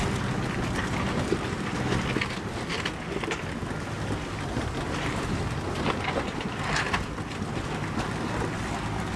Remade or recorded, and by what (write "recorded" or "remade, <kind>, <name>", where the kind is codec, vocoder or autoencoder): recorded